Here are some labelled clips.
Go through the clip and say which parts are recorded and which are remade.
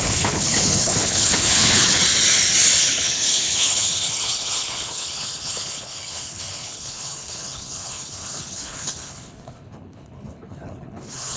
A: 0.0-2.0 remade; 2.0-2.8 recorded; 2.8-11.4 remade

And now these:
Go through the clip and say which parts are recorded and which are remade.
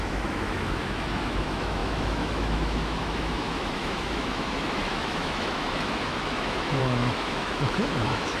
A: 0.0-8.4 remade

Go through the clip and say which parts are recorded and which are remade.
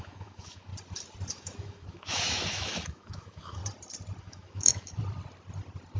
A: 0.0-0.7 remade; 0.7-1.3 recorded; 1.3-3.6 remade; 3.6-4.2 recorded; 4.2-5.0 remade; 5.0-6.0 recorded